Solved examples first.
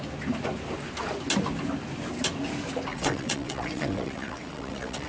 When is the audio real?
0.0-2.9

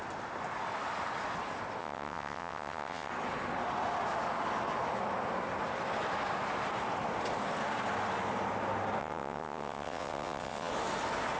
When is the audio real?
0.0-1.8; 3.1-9.0; 10.7-11.4

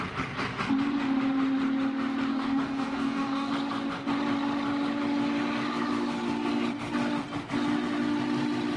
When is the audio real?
0.0-2.3; 3.5-8.8